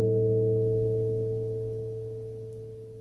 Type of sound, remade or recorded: recorded